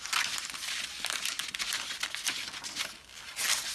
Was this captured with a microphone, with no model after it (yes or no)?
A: yes